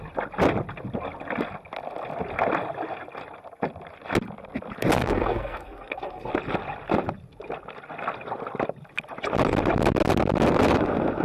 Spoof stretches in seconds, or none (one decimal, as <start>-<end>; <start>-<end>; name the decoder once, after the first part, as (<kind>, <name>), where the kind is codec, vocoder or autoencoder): 5.0-6.3 (codec, SNAC)